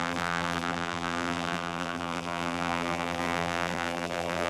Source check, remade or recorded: remade